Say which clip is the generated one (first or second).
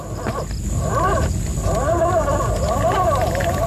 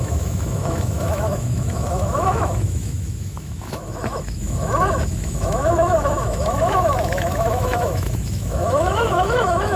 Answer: second